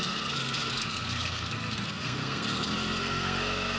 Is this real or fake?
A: fake